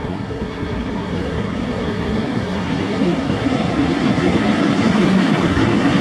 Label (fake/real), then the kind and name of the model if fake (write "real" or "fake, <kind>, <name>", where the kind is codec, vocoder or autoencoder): fake, codec, SNAC